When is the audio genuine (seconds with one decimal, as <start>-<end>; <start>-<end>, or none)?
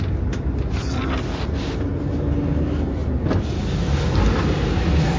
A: 0.0-5.2